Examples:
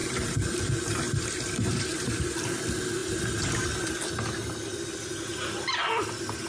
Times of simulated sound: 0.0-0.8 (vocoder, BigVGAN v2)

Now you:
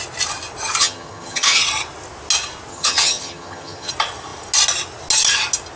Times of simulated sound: 0.8-1.6 (vocoder, HiFi-GAN); 2.7-3.9

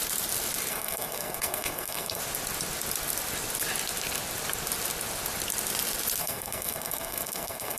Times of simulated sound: 0.7-2.2 (codec, SNAC); 6.2-7.8

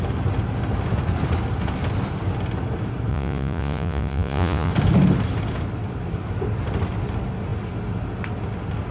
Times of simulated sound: 3.1-4.7 (vocoder, Vocos)

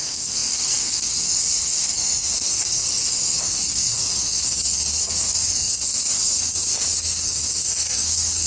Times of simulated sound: 0.0-8.5 (codec, SNAC)

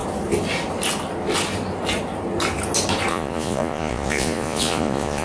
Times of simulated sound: 3.1-5.2 (vocoder, Vocos)